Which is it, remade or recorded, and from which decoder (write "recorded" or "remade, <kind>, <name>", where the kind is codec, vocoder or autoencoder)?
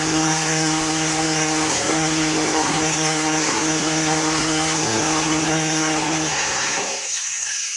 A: remade, codec, SNAC